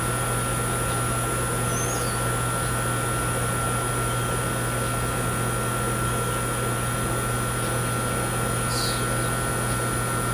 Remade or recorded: recorded